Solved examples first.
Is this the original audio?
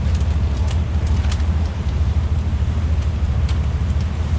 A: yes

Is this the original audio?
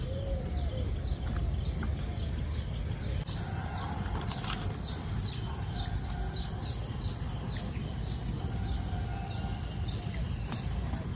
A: yes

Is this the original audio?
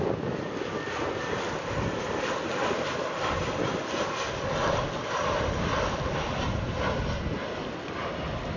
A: yes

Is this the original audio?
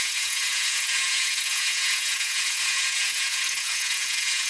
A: no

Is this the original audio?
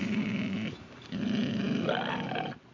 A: yes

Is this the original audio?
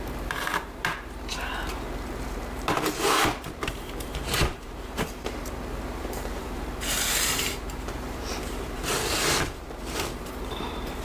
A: no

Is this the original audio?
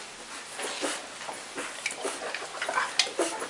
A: yes